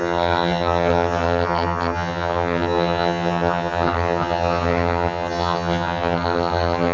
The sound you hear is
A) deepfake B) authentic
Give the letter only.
A